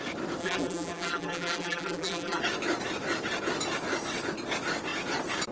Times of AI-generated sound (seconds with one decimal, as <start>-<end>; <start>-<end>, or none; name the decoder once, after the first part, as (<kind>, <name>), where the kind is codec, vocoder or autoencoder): 0.4-2.4 (vocoder, BigVGAN v2)